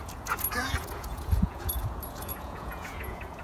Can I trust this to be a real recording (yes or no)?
no